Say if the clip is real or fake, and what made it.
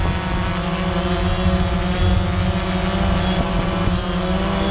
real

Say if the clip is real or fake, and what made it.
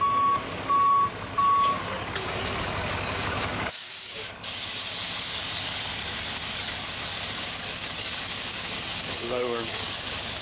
fake, codec, DAC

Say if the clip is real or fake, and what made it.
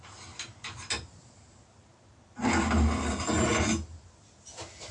real